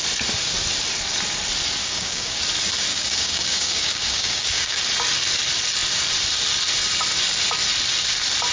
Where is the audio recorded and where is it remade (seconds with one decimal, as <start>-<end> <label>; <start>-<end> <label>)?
0.0-1.8 recorded; 1.8-2.4 remade; 2.4-2.9 recorded; 2.9-4.8 remade; 4.8-8.5 recorded